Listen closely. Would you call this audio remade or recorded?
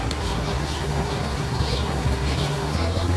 remade